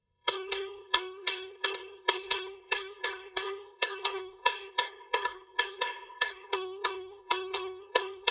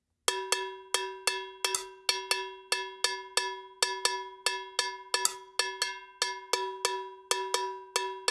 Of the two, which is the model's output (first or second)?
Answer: first